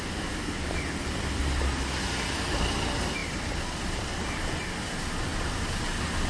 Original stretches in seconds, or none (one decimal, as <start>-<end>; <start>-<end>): 0.0-6.3